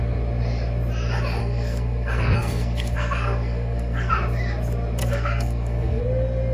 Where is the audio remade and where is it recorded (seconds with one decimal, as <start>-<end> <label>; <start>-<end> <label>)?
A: 0.0-1.4 recorded; 1.4-4.1 remade; 4.1-5.0 recorded; 5.0-6.0 remade; 6.0-6.5 recorded